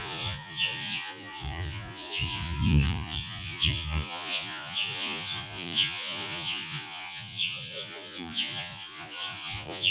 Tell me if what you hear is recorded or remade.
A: remade